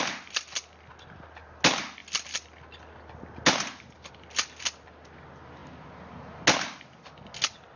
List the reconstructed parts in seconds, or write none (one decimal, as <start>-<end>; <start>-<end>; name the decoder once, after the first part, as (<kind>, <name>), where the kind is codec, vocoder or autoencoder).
none